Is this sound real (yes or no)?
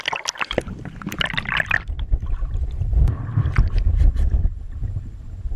yes